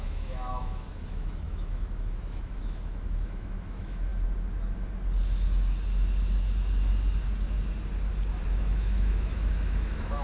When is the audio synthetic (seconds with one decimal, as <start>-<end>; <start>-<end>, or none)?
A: 0.0-4.1; 8.5-10.2